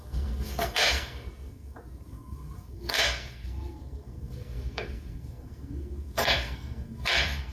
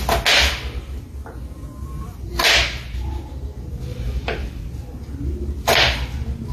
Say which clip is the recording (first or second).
second